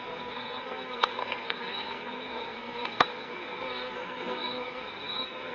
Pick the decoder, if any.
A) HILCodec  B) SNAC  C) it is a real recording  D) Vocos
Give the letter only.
B